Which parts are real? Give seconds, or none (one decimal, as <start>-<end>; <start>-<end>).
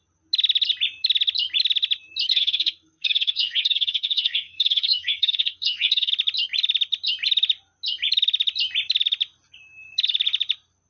0.0-2.3; 6.1-10.9